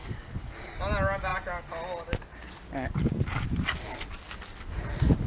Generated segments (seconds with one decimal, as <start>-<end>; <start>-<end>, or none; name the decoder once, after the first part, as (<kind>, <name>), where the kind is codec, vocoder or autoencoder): 0.0-0.8 (codec, DAC)